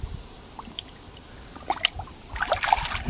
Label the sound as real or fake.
fake